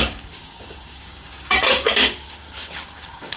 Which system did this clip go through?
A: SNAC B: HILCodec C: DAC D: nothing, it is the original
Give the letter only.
C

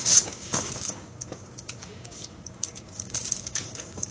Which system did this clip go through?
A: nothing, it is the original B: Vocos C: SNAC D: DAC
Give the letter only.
D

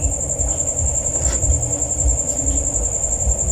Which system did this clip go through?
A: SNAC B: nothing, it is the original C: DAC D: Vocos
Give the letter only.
B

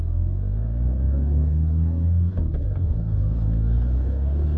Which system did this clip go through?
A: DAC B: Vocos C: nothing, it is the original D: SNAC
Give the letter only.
A